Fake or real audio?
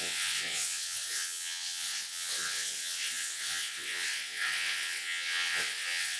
fake